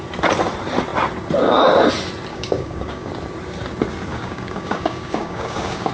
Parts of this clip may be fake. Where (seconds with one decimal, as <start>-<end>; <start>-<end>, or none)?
2.3-3.1; 4.1-5.9

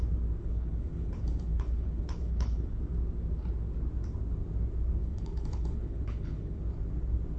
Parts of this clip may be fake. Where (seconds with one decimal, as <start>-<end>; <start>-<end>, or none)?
0.4-2.8; 5.0-6.6

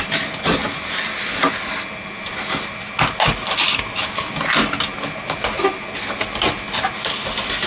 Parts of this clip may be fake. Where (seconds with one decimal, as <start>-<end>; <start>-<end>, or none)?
none

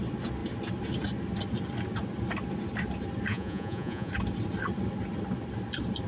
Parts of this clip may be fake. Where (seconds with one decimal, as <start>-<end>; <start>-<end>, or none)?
3.3-4.1

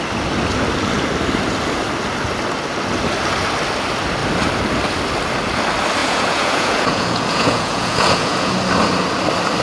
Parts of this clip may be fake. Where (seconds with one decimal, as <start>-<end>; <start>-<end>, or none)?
6.0-8.5

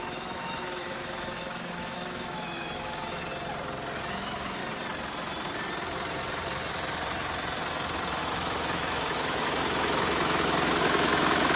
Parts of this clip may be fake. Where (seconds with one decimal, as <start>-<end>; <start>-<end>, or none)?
0.0-3.2; 4.0-4.6; 8.2-11.6